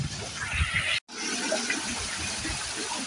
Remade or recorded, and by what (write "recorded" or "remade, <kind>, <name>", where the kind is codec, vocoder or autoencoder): recorded